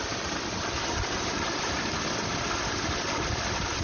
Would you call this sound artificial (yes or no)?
no